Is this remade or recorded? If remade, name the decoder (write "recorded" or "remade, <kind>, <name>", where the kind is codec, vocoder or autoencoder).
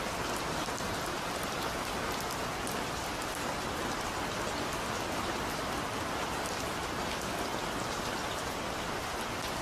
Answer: recorded